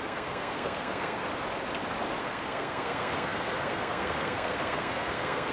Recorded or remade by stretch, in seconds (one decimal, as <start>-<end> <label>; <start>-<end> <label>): 0.0-1.3 remade; 1.3-2.2 recorded; 2.2-5.5 remade